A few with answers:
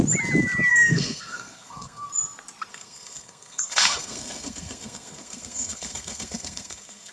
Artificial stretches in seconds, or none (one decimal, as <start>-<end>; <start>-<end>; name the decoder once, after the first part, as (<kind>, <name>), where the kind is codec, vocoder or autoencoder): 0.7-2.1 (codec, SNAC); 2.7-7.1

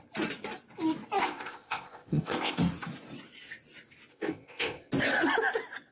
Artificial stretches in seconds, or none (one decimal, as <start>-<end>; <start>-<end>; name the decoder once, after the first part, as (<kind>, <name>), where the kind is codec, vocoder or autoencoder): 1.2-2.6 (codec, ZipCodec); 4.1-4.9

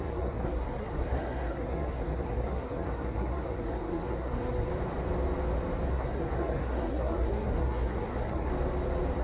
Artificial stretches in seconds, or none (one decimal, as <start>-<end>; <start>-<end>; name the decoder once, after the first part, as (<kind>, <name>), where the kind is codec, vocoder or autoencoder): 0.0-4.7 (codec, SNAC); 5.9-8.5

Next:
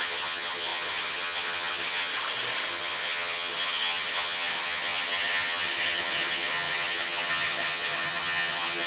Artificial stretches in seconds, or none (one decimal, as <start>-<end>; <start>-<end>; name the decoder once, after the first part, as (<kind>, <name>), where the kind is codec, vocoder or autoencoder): 0.0-2.1 (vocoder, HiFi-GAN); 2.7-8.9

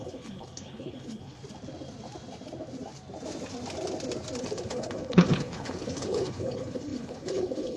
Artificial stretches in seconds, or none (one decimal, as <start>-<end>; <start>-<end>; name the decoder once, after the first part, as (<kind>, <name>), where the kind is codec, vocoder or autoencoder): 0.0-1.4 (codec, HILCodec); 4.4-7.8

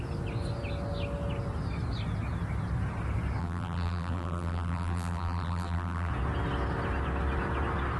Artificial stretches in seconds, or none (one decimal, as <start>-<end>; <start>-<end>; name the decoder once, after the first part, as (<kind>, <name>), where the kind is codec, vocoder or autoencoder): 3.4-6.1 (vocoder, BigVGAN v2)

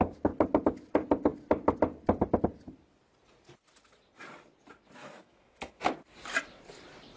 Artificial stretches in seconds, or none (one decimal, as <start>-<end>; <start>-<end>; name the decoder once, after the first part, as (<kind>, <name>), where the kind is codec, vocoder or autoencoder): 5.0-5.9 (autoencoder, DAC-VAE)

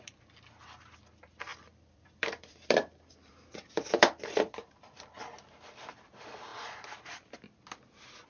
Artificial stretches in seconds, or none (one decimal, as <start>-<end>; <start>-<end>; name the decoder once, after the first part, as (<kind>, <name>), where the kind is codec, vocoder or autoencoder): 1.5-5.1 (vocoder, BigVGAN v2)